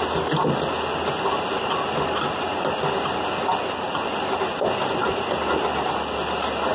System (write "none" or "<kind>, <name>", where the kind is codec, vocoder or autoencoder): none